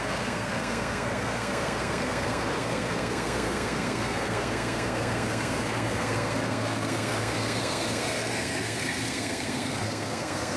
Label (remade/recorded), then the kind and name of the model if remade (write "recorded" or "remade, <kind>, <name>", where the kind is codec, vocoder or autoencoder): remade, codec, SNAC